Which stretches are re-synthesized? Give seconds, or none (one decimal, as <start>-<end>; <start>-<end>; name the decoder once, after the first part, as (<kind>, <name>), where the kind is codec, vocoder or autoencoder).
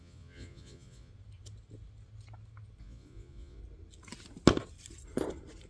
0.0-1.1 (vocoder, Vocos); 2.8-3.6